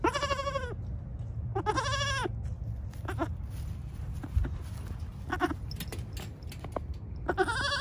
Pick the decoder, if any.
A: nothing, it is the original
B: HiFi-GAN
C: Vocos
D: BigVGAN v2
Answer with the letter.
A